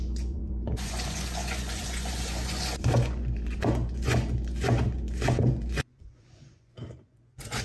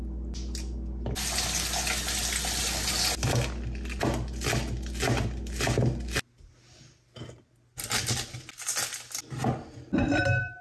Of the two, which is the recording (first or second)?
second